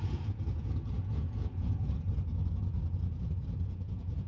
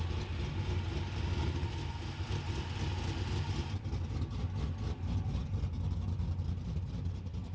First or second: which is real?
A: second